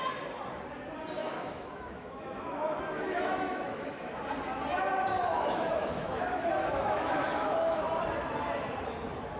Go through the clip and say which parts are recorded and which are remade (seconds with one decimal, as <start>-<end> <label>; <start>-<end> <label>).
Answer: 0.0-1.2 recorded; 1.2-4.2 remade; 4.2-5.1 recorded; 5.1-7.8 remade; 7.8-9.4 recorded